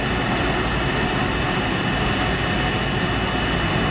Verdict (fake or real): real